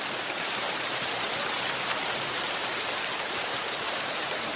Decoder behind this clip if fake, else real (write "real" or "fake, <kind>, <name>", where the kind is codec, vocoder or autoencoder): fake, vocoder, BigVGAN v2